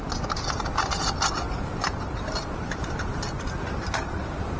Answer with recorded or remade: recorded